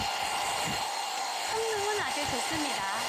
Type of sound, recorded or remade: recorded